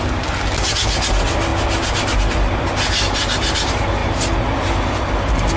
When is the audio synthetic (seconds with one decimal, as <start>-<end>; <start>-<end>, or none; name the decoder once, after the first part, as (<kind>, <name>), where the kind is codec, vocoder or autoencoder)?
none